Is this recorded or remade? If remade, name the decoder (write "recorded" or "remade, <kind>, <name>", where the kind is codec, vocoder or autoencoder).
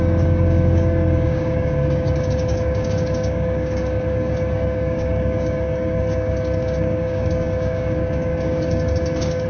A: remade, codec, DAC